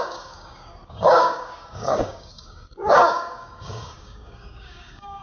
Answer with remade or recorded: remade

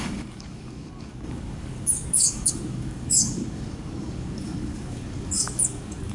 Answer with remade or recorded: remade